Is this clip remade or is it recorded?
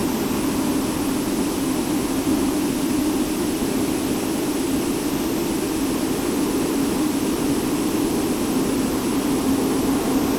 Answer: recorded